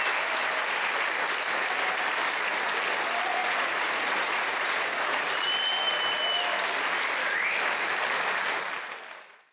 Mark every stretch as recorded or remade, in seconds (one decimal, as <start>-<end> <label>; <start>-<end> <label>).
0.0-3.4 recorded; 3.4-5.3 remade; 5.3-9.5 recorded